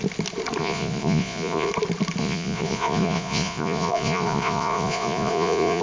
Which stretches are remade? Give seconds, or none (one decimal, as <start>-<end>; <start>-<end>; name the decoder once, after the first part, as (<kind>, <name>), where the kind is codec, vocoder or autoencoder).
0.6-1.7 (vocoder, Vocos); 2.2-5.8